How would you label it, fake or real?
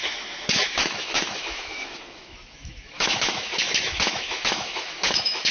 fake